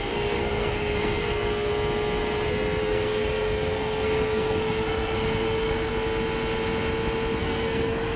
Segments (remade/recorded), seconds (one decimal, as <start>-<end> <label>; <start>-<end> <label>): 0.0-1.7 remade; 1.7-2.8 recorded; 2.8-5.9 remade; 5.9-7.4 recorded; 7.4-8.2 remade